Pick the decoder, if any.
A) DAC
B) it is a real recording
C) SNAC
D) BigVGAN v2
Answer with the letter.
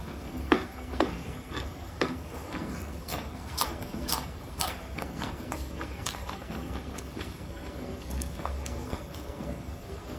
C